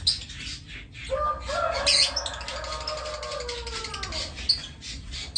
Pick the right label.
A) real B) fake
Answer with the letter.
A